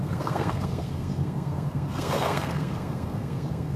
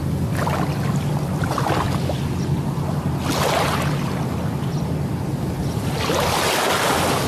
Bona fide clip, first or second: second